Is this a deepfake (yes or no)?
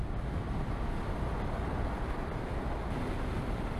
no